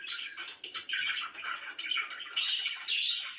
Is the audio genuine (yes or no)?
yes